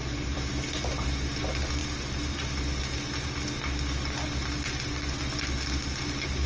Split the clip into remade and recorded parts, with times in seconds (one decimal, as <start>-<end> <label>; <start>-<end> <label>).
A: 0.0-1.4 remade; 1.4-6.5 recorded